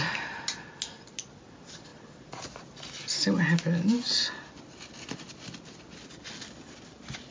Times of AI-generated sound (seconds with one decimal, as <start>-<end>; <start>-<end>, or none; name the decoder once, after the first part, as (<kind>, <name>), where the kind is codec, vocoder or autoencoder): none